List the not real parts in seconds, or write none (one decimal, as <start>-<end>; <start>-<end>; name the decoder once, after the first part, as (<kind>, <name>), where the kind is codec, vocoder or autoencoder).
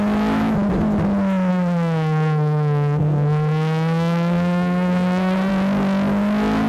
1.5-5.5 (codec, SNAC)